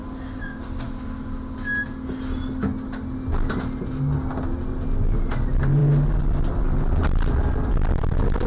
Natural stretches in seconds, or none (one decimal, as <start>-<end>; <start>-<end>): 0.0-8.5